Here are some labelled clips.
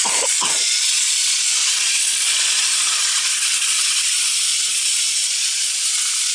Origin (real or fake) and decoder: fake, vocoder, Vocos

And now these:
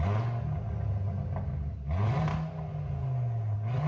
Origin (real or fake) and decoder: real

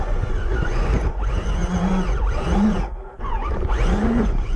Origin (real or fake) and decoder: fake, vocoder, Vocos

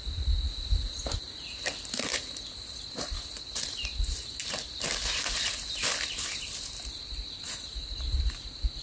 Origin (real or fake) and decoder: real